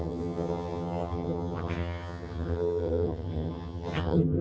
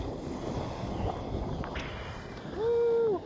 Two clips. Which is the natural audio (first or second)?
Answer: second